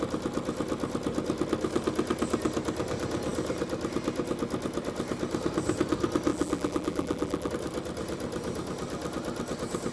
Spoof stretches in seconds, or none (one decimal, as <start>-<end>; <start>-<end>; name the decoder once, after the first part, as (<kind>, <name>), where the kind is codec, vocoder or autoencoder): 6.3-7.5 (vocoder, BigVGAN v2)